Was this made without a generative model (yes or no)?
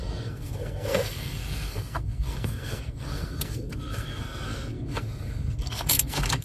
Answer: no